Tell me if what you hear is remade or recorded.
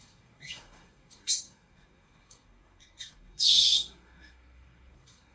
remade